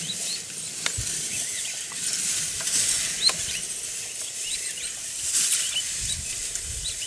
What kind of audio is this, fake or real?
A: real